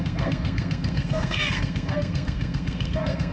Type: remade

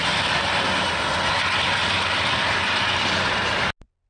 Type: recorded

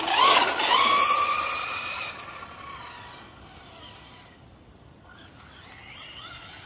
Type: recorded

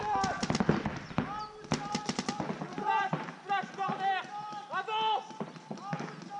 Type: recorded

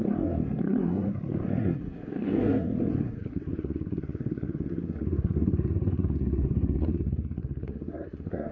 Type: remade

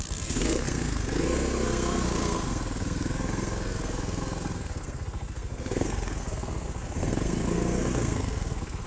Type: remade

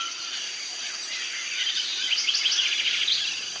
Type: recorded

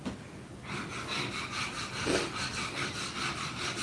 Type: recorded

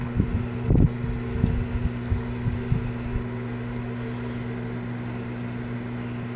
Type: recorded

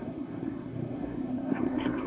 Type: remade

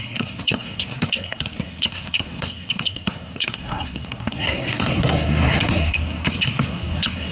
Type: remade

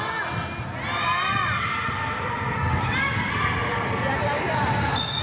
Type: recorded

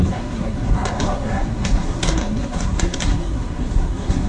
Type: remade